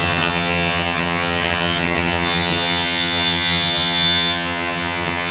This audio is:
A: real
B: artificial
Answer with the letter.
B